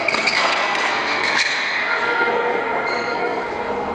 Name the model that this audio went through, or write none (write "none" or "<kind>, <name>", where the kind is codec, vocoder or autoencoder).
codec, SNAC